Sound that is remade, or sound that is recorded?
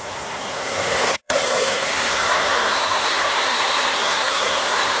remade